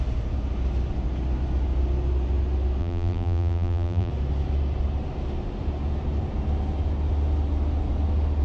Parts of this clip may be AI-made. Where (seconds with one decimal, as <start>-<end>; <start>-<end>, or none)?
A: 2.8-4.1